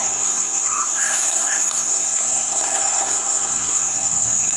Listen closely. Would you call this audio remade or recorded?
remade